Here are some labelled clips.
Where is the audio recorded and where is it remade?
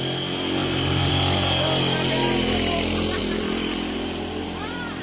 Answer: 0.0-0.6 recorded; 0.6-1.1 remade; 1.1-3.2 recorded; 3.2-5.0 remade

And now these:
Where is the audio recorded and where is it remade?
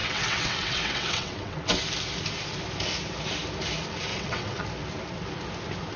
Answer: 0.0-1.8 remade; 1.8-4.1 recorded; 4.1-4.6 remade; 4.6-6.0 recorded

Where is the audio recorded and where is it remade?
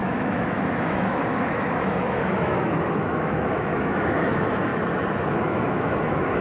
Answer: 0.0-4.7 remade; 4.7-5.3 recorded; 5.3-6.4 remade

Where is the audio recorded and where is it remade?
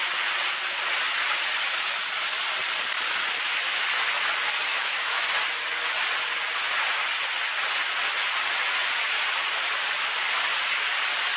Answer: 0.0-4.7 recorded; 4.7-5.2 remade; 5.2-11.4 recorded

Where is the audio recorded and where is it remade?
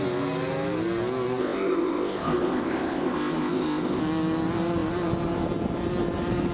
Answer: 0.0-1.4 recorded; 1.4-4.0 remade; 4.0-6.5 recorded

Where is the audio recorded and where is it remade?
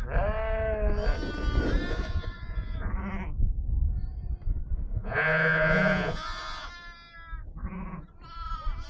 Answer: 0.0-1.9 recorded; 1.9-2.9 remade; 2.9-4.9 recorded; 4.9-6.7 remade; 6.7-8.9 recorded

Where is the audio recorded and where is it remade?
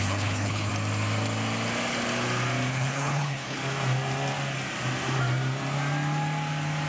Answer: 0.0-0.7 remade; 0.7-2.7 recorded; 2.7-3.6 remade; 3.6-6.9 recorded